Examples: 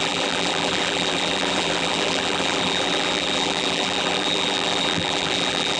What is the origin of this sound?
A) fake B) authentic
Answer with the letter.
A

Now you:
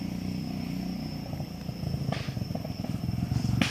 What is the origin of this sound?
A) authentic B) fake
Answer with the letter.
A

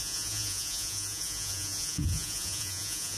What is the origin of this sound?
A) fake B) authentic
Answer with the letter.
A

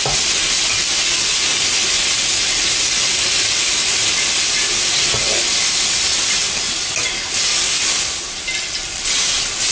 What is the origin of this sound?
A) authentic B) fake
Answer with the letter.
A